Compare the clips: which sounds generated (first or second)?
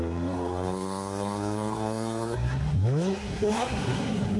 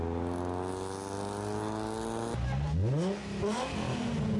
first